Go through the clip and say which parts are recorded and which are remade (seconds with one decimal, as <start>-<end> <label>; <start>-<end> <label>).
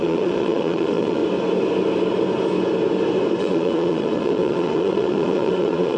0.0-1.2 remade; 1.2-3.4 recorded; 3.4-6.0 remade